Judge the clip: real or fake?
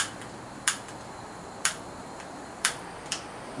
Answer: fake